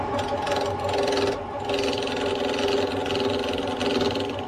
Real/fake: real